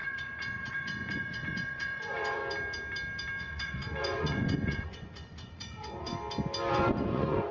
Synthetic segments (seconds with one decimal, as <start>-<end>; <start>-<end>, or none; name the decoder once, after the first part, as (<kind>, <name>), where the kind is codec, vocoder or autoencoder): 0.0-2.4 (vocoder, Vocos); 3.4-6.1; 6.7-7.5